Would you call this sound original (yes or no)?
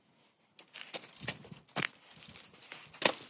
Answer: yes